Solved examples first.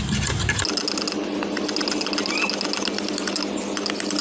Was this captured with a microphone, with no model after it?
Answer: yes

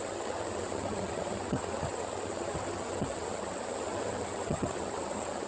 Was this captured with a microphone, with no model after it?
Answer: no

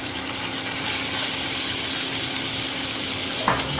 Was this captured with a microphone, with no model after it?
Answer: yes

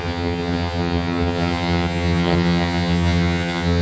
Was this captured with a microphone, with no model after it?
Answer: no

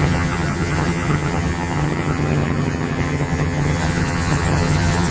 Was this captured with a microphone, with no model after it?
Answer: no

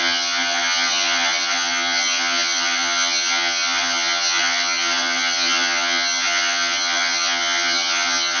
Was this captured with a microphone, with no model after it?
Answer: no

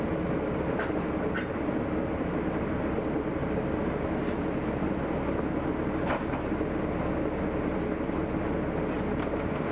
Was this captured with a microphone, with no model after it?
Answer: yes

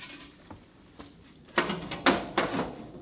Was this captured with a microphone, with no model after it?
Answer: yes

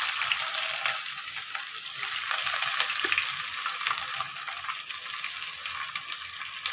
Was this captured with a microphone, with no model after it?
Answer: yes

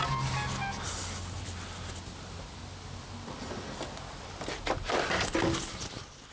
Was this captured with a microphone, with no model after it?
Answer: yes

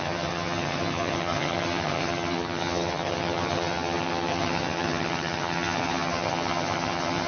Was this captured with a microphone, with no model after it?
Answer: no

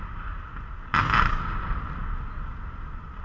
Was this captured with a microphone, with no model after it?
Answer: yes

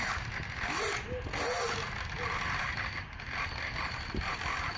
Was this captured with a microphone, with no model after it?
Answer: yes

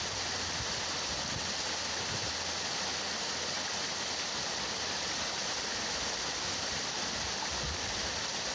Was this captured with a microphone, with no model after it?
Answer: yes